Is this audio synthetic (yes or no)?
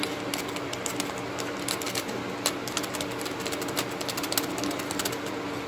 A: no